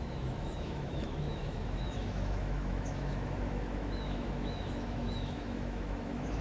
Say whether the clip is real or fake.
fake